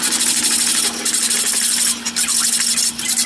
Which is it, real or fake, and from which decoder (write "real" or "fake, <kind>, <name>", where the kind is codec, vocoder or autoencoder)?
real